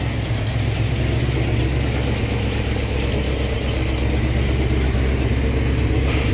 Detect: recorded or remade recorded